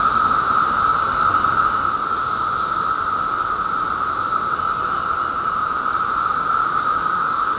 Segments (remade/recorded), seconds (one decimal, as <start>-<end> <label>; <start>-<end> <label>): 0.0-6.6 recorded; 6.6-7.6 remade